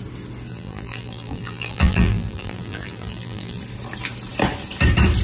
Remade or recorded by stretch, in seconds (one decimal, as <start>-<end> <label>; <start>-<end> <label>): 0.0-0.5 recorded; 0.5-3.6 remade; 3.6-5.2 recorded